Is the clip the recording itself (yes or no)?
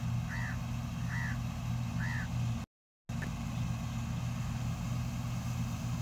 yes